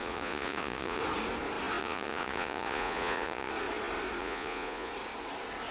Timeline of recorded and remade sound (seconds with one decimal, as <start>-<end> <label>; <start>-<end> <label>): 0.0-1.0 remade; 1.0-1.8 recorded; 1.8-3.5 remade; 3.5-4.2 recorded; 4.2-4.9 remade; 4.9-5.7 recorded